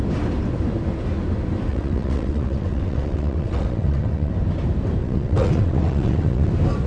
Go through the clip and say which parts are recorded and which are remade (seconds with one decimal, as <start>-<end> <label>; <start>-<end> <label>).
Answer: 0.0-1.7 recorded; 1.7-4.3 remade; 4.3-5.0 recorded; 5.0-6.5 remade; 6.5-6.9 recorded